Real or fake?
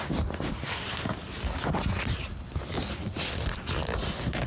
real